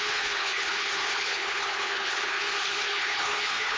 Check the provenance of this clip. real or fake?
fake